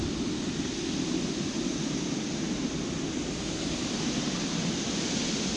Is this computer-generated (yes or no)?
no